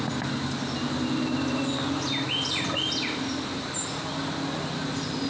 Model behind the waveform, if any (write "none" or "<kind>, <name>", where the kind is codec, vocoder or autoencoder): none